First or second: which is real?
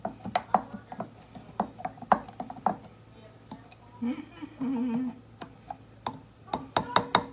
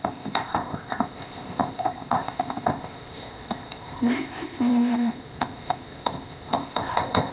first